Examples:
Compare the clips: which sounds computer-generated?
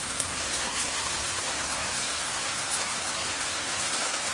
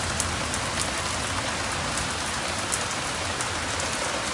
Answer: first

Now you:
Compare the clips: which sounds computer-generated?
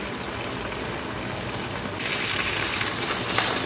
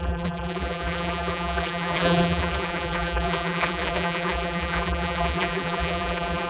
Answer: second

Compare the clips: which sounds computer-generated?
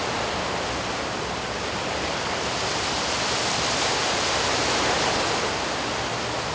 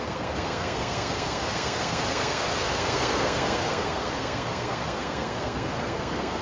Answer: second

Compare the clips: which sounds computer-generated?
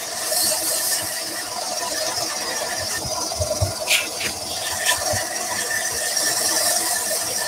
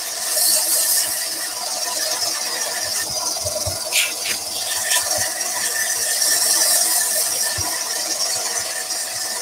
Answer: first